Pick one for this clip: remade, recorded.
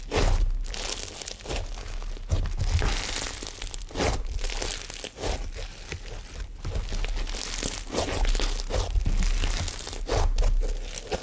recorded